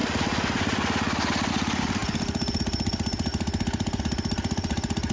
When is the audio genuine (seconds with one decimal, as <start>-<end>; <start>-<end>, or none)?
0.0-5.1